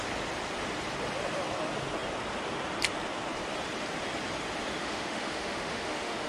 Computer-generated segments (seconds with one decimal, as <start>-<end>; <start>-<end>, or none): 4.8-6.3